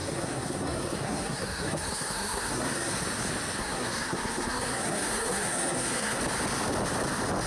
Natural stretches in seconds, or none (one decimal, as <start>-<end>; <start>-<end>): 3.0-3.6; 6.2-7.5